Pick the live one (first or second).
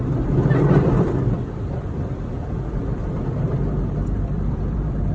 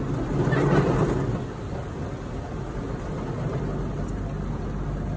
second